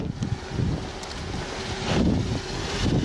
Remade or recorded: recorded